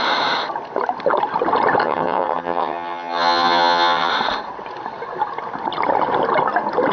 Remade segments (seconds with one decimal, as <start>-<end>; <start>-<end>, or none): 1.8-4.1